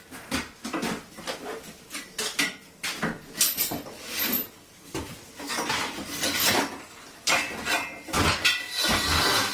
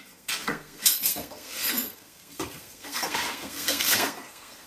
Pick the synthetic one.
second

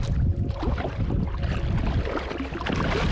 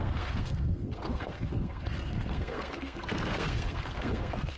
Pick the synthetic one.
second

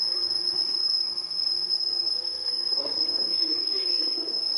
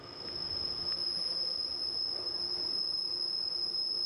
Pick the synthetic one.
first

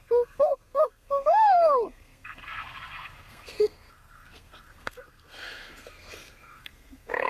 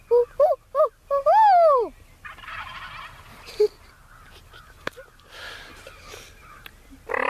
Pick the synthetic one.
first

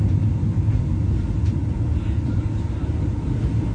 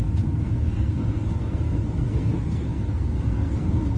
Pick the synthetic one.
second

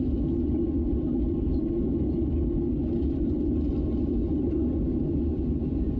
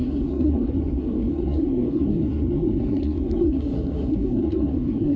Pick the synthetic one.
second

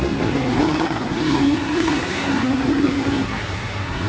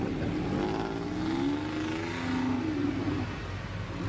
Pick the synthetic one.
first